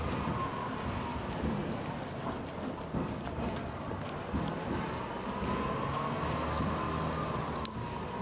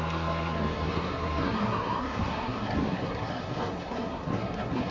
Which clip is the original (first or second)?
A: first